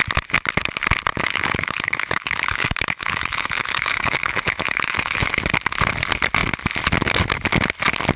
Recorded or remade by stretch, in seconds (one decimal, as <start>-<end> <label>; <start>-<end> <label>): 0.0-1.1 recorded; 1.1-5.4 remade; 5.4-8.2 recorded